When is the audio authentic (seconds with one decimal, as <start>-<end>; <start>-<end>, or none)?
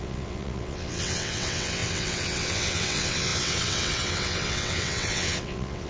none